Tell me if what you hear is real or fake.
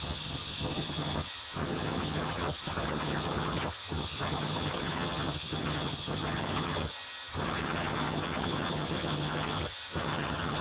fake